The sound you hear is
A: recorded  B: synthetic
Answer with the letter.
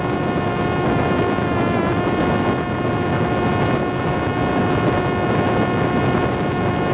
A